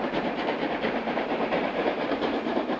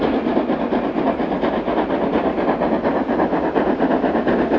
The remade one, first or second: first